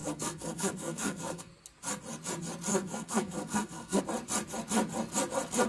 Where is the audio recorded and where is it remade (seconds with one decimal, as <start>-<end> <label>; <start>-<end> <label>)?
0.0-1.5 remade; 1.5-2.7 recorded; 2.7-4.0 remade; 4.0-5.7 recorded